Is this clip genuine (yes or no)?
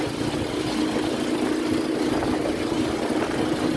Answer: yes